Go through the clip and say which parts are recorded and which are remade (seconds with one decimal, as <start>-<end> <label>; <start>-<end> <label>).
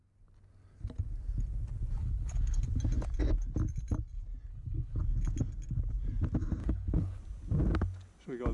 0.0-2.0 recorded; 2.0-2.7 remade; 2.7-4.5 recorded; 4.5-5.0 remade; 5.0-6.6 recorded; 6.6-7.2 remade; 7.2-8.5 recorded